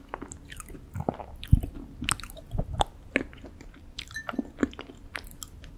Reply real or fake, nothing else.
real